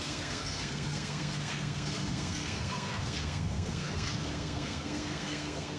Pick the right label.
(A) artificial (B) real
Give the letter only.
A